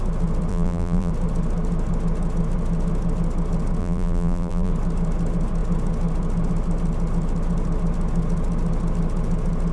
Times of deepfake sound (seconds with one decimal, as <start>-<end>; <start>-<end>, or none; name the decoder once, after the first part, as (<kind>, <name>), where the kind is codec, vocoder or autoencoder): 0.5-1.1 (vocoder, BigVGAN v2); 3.8-4.7